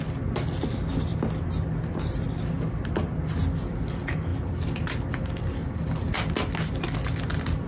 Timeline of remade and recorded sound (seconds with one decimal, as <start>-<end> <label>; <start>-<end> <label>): 0.0-5.6 recorded; 5.6-6.1 remade; 6.1-7.7 recorded